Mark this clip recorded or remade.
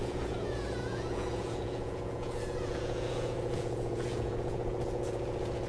remade